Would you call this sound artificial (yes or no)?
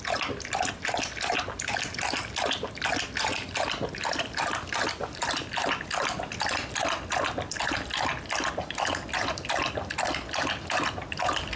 no